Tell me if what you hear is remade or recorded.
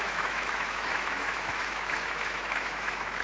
remade